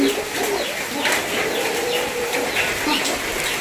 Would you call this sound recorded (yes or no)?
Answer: yes